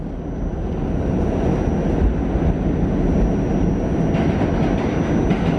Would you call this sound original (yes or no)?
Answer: yes